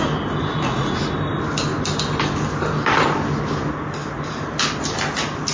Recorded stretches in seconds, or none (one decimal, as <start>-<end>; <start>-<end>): 0.0-0.5; 1.0-5.5